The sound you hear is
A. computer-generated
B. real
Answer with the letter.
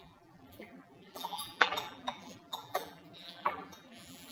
A